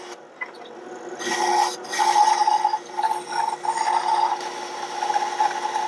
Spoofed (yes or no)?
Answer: no